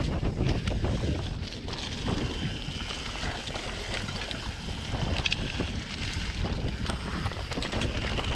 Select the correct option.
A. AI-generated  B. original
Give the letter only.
B